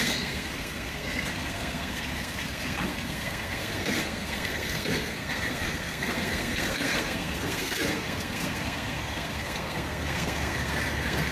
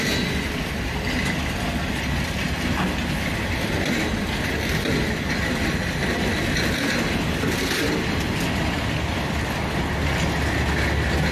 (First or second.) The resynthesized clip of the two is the first